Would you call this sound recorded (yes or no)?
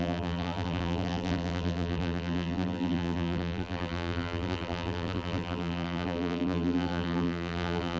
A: no